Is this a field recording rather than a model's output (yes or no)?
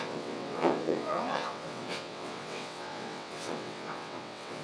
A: no